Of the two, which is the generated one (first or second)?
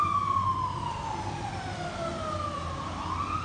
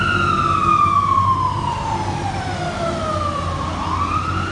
first